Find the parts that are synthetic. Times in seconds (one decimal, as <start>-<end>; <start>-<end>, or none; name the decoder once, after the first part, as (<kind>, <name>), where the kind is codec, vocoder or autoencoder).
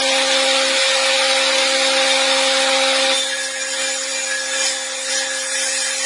none